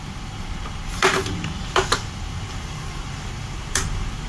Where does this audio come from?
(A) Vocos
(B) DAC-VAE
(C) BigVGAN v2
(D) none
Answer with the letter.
C